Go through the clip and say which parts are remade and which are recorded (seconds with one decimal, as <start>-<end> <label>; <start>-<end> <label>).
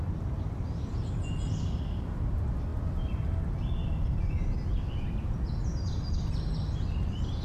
0.0-7.4 recorded